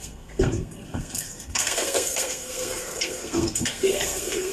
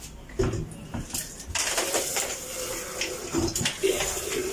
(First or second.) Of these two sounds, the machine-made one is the first